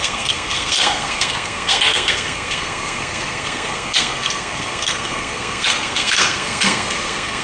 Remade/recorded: remade